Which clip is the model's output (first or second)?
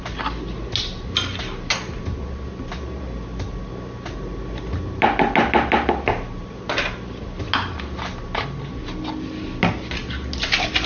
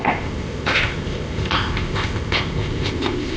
second